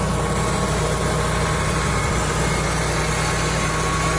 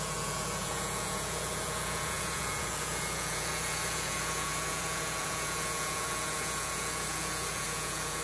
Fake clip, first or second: second